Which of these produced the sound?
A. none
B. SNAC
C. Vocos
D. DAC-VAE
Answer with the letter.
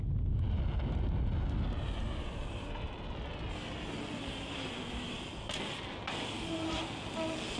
A